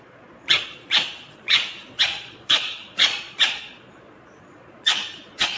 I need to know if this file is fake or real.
fake